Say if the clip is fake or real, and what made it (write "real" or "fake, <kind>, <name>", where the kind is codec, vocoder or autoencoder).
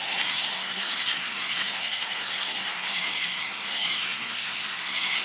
fake, codec, SNAC